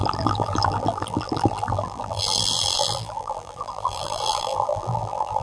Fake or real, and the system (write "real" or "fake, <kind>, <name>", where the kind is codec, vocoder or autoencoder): fake, vocoder, BigVGAN v2